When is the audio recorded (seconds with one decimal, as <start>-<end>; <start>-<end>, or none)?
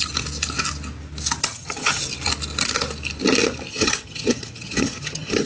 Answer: 0.0-1.4; 2.0-3.7